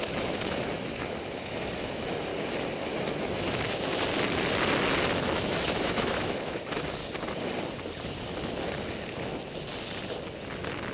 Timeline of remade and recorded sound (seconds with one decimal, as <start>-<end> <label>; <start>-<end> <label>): 0.0-2.3 remade; 2.3-3.0 recorded; 3.0-3.9 remade; 3.9-5.2 recorded; 5.2-7.0 remade; 7.0-10.9 recorded